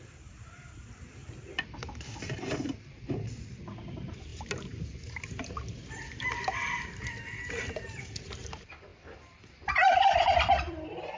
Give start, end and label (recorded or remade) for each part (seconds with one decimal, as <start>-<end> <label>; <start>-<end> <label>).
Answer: 0.0-4.3 remade; 4.3-7.5 recorded; 7.5-11.2 remade